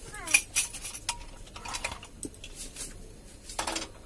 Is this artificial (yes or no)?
no